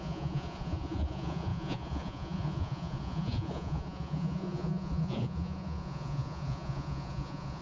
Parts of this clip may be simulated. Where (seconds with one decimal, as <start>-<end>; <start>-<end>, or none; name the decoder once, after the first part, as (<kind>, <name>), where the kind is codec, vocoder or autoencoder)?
0.0-7.6 (vocoder, Vocos)